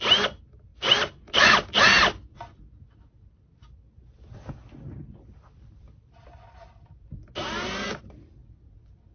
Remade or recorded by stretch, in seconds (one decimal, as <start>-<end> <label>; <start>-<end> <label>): 0.0-9.1 recorded